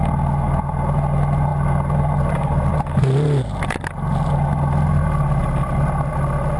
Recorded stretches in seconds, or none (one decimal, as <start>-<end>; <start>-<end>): 0.0-6.6